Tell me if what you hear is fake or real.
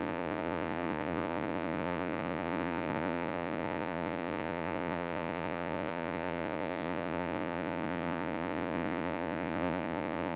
fake